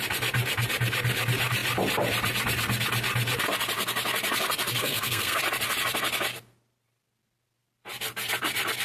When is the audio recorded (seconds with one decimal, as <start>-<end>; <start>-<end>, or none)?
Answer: 0.0-4.8; 5.4-8.8